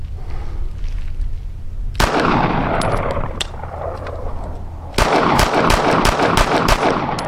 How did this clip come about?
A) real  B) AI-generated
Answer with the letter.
A